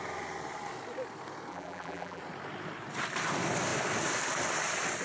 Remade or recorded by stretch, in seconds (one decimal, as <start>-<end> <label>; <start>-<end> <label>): 0.0-1.5 recorded; 1.5-2.2 remade; 2.2-5.0 recorded